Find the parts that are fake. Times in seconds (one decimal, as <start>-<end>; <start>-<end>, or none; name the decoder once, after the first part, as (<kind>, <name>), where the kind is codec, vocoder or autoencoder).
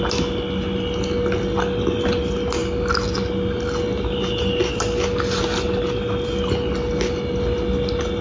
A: none